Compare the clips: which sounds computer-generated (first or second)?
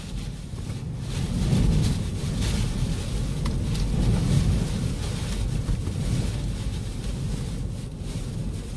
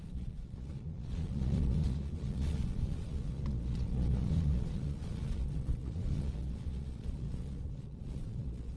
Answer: second